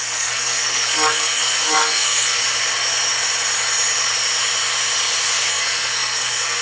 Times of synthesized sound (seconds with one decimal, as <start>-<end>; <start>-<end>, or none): 0.0-2.4; 5.5-6.6